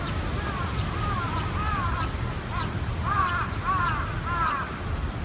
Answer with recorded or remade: recorded